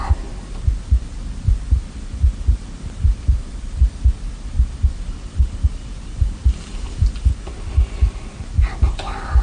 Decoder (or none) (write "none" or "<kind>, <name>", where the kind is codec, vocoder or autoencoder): none